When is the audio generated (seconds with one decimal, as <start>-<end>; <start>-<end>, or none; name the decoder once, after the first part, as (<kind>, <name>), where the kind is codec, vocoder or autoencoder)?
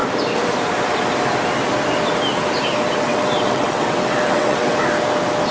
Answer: 3.1-4.8 (vocoder, WaveNeXt)